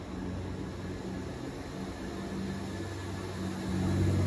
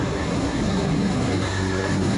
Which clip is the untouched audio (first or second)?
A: first